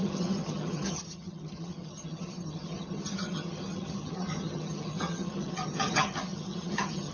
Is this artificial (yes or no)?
yes